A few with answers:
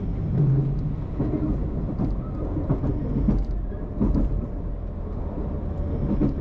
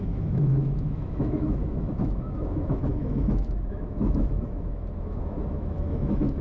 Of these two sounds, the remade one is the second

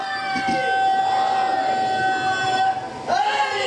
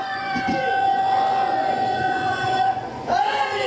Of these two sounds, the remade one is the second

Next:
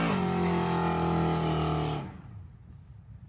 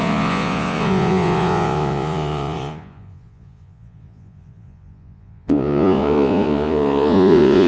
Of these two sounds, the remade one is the second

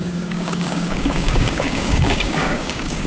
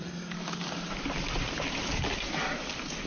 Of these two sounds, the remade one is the first